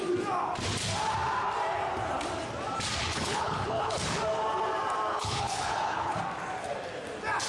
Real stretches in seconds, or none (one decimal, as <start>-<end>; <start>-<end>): 0.0-3.0; 4.2-5.1; 6.2-7.5